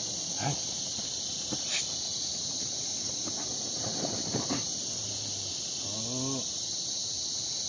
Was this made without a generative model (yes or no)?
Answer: yes